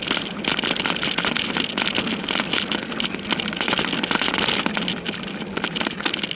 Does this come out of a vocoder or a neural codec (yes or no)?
no